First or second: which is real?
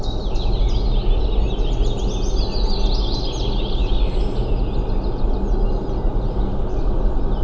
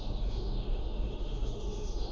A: first